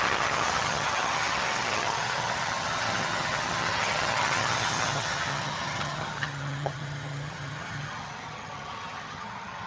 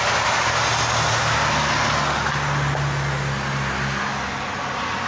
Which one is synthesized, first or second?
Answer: first